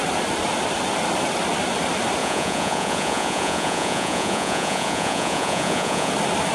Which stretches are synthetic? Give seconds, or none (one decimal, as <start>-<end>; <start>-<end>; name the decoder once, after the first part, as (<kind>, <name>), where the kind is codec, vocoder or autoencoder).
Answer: 2.2-6.1 (vocoder, Vocos)